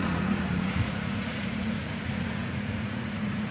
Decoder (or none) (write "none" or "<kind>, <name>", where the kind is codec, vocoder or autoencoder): vocoder, Vocos